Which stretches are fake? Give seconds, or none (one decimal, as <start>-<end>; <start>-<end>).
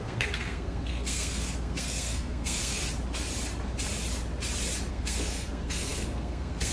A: 0.0-2.8; 4.9-6.7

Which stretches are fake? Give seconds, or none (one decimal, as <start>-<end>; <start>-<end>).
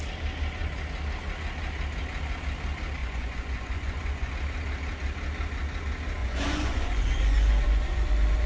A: 3.0-4.3; 6.2-8.5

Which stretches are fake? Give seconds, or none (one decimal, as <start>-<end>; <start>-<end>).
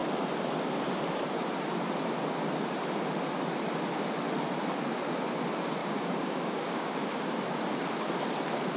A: 5.8-7.0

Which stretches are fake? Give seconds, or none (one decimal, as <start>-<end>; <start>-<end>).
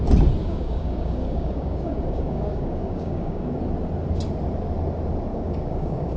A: 0.4-3.6; 5.3-6.2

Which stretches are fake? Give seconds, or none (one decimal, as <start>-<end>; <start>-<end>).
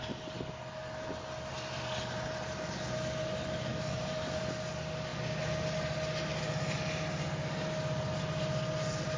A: 3.7-4.4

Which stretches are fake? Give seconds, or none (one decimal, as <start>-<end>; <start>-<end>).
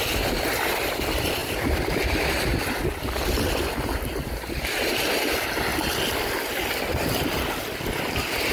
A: none